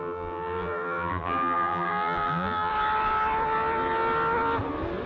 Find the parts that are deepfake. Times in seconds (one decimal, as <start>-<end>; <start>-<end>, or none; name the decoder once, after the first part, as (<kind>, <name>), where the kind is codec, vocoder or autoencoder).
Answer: 0.0-2.7 (vocoder, BigVGAN v2)